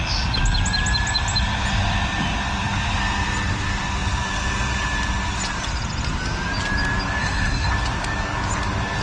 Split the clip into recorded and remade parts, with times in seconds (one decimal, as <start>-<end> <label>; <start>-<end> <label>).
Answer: 0.0-7.2 recorded; 7.2-7.7 remade; 7.7-9.0 recorded